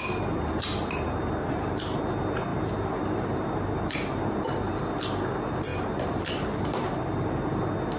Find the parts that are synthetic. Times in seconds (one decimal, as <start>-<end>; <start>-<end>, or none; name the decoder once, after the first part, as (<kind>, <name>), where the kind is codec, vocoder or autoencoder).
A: 1.4-2.0 (vocoder, BigVGAN v2); 2.5-4.8; 5.7-7.6